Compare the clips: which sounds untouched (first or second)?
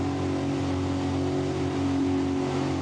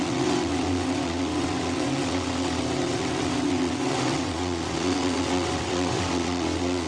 first